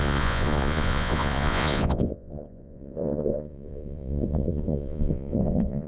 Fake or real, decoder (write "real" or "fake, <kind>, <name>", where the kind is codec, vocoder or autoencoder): fake, vocoder, Vocos